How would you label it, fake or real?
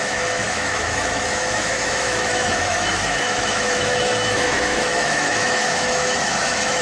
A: fake